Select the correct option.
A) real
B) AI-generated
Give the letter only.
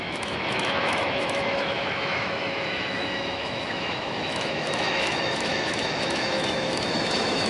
B